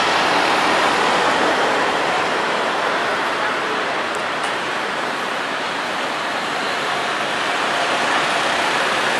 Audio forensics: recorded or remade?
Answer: remade